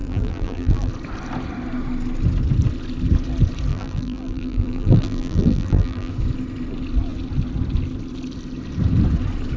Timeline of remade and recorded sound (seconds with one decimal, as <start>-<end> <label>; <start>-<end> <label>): 0.0-0.9 remade; 0.9-3.7 recorded; 3.7-6.1 remade; 6.1-9.6 recorded